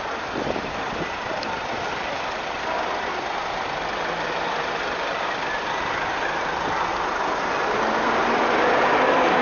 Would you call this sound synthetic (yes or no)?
yes